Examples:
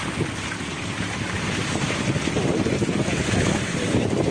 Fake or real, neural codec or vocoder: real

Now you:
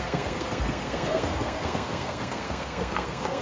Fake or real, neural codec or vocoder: fake, codec, SNAC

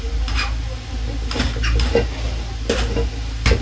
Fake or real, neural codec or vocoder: real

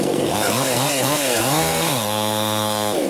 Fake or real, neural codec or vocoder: fake, codec, SNAC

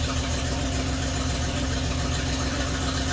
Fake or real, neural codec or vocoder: real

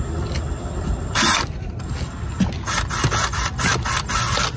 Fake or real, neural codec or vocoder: real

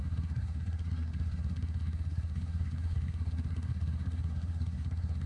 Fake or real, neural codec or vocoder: fake, codec, SNAC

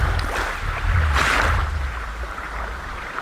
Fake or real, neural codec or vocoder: real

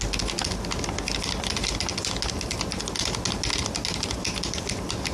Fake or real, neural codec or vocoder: real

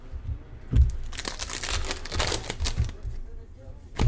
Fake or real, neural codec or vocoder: real